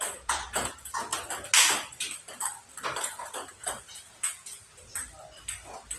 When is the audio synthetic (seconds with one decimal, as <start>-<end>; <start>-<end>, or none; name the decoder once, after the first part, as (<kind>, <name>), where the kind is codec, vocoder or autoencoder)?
0.0-1.1 (vocoder, Vocos); 3.0-4.9